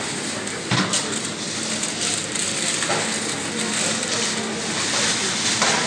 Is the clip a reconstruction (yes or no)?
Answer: no